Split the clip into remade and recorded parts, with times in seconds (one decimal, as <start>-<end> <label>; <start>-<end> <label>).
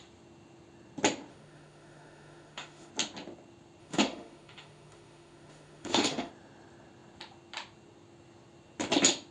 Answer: 0.0-1.3 recorded; 1.3-2.9 remade; 2.9-3.8 recorded; 3.8-6.3 remade; 6.3-9.3 recorded